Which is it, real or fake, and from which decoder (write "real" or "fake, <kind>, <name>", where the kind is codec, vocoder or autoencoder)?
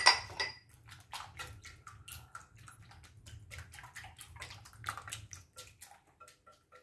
real